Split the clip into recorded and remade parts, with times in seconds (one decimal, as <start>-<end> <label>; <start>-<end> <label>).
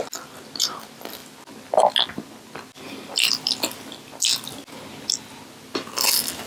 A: 0.0-6.5 recorded